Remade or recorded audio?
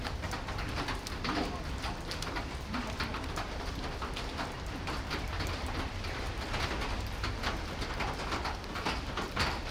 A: remade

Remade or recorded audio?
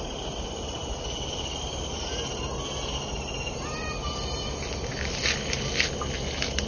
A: recorded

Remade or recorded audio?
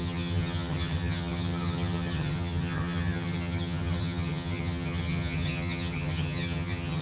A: remade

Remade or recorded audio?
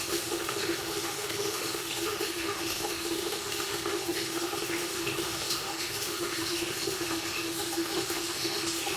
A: remade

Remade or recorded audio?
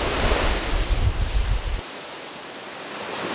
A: recorded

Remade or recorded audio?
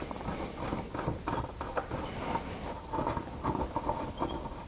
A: recorded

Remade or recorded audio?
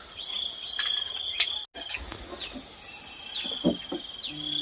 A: recorded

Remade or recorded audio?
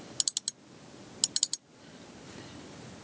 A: recorded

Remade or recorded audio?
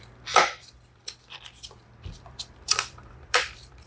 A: remade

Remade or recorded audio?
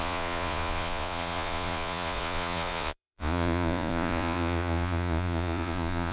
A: remade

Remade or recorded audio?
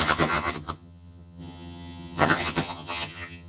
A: remade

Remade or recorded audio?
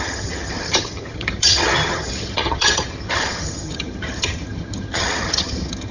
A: remade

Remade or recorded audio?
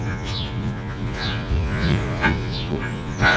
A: remade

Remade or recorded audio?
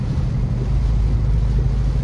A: recorded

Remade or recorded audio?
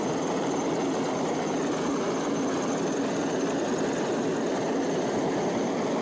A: recorded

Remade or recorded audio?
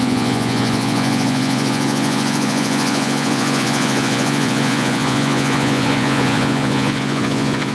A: remade